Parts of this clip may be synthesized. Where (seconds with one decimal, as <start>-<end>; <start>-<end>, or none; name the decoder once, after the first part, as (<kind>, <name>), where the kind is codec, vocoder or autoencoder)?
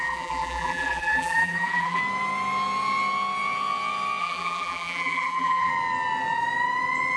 0.0-2.0 (vocoder, BigVGAN v2); 4.2-5.7